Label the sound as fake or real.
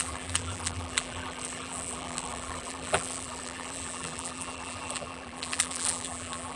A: fake